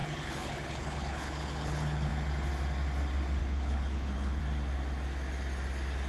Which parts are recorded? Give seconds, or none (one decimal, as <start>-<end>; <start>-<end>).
2.1-3.4; 4.4-6.1